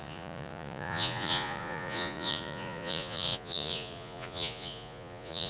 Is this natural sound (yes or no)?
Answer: no